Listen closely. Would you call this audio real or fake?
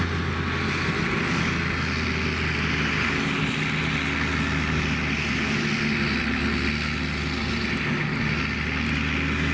real